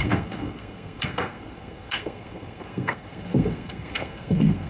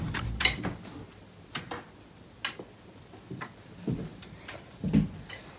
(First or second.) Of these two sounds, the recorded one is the second